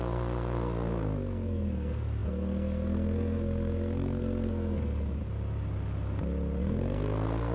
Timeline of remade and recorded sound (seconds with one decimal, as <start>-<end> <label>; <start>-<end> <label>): 0.0-5.2 remade; 5.2-6.6 recorded; 6.6-7.5 remade